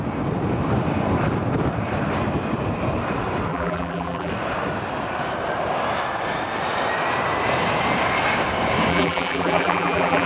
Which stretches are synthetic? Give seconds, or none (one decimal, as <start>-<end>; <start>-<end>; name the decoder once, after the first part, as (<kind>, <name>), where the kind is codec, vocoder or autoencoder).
3.5-4.3 (vocoder, BigVGAN v2); 8.9-10.3